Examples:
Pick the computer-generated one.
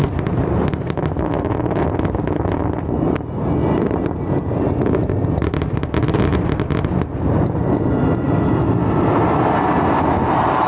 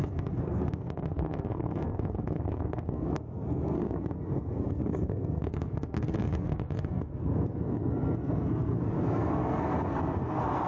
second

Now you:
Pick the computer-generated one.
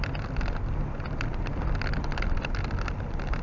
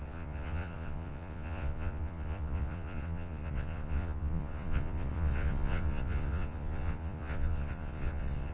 second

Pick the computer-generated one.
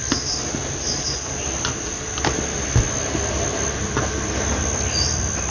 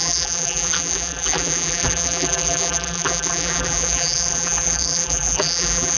second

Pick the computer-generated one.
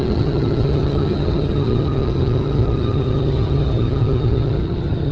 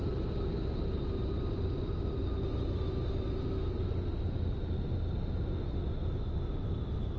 first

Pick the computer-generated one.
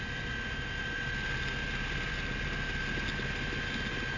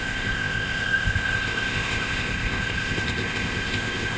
second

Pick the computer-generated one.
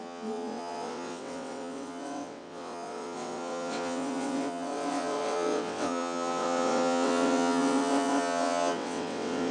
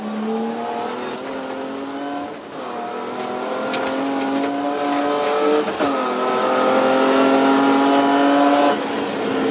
first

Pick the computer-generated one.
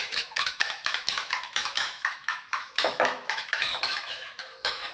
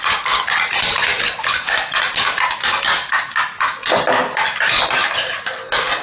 first